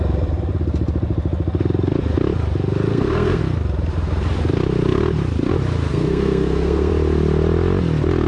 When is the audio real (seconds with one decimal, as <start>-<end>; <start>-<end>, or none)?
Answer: 0.0-2.9; 3.4-5.9; 6.9-8.3